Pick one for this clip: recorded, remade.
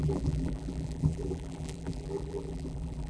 remade